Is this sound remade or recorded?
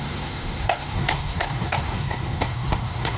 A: remade